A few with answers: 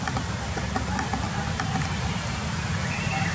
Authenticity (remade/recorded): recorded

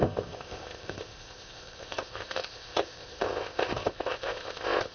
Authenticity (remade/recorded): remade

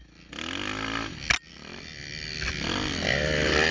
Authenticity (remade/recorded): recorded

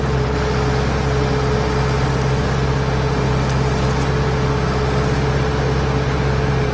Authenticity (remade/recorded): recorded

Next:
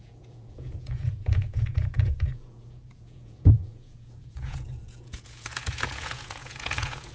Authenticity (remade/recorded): remade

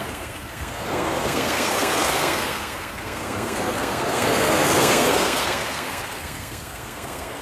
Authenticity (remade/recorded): remade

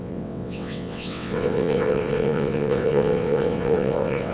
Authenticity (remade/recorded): remade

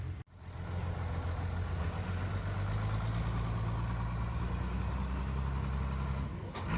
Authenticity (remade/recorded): recorded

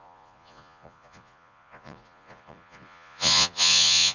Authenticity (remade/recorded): remade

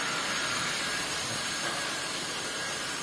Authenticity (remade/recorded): remade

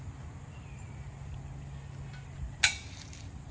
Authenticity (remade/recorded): recorded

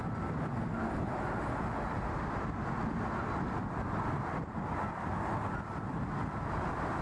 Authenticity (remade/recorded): recorded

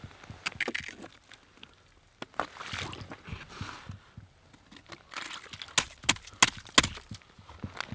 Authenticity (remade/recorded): recorded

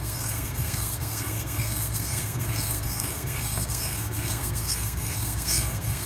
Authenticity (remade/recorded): remade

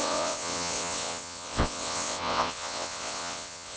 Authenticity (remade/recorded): remade